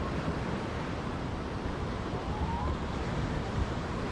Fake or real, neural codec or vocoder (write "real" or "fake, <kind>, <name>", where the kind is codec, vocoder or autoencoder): fake, vocoder, BigVGAN v2